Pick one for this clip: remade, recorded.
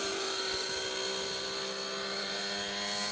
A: recorded